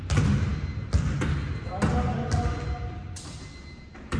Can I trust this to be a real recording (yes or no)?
yes